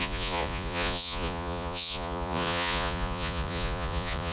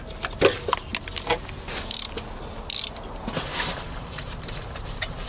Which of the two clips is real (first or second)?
second